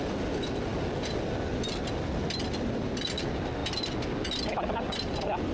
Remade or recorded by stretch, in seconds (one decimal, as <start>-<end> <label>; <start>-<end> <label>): 0.0-5.5 recorded